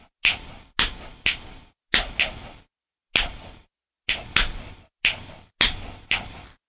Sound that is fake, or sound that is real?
real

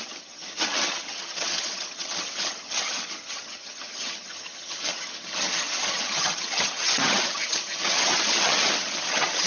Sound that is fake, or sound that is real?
fake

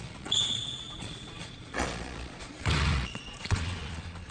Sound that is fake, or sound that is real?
fake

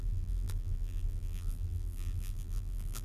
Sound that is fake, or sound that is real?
fake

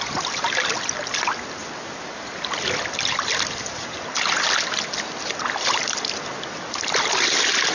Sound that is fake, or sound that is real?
real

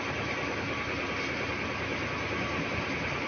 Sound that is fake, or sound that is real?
real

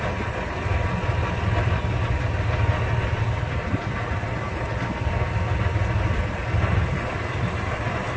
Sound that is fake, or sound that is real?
real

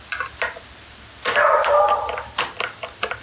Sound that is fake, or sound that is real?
real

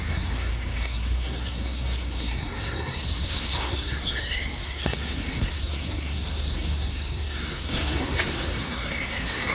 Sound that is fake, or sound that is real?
fake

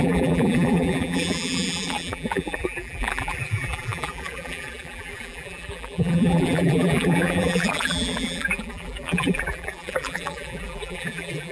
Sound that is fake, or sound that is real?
fake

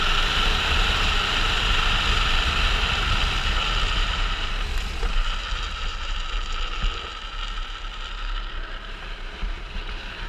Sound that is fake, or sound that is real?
real